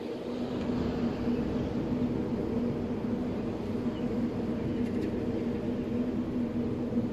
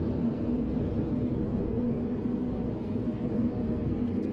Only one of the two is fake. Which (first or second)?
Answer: second